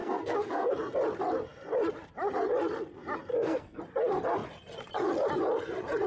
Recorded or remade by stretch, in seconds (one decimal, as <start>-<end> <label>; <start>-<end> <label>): 0.0-0.7 remade; 0.7-3.3 recorded; 3.3-3.8 remade; 3.8-6.1 recorded